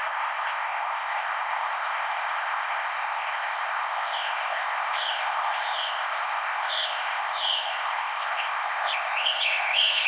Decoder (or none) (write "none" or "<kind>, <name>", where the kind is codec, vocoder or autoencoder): codec, ZipCodec